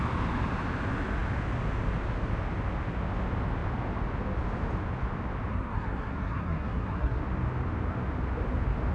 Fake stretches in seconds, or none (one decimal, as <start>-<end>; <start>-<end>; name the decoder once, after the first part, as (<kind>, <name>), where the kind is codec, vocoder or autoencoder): 5.5-7.2 (codec, SNAC)